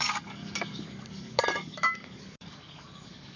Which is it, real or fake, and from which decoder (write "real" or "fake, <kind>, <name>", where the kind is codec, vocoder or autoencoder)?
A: fake, codec, DAC